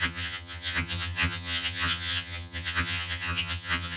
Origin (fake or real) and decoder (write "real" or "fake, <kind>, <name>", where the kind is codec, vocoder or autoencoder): fake, vocoder, HiFi-GAN